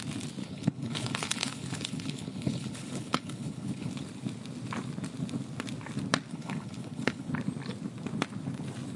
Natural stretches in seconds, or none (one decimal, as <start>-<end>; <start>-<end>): 0.0-0.4; 3.9-6.3; 7.3-9.0